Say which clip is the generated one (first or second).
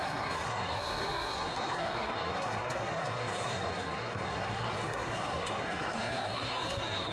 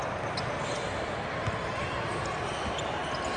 first